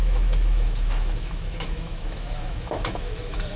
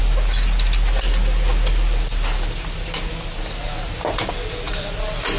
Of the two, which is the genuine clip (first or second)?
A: second